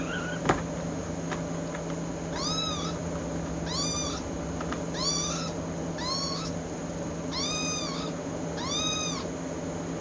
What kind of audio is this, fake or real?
real